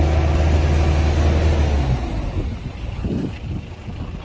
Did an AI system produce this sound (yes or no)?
no